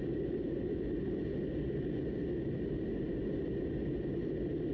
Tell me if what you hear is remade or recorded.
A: recorded